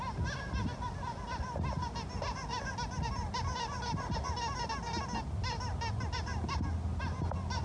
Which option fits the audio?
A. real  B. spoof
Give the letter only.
A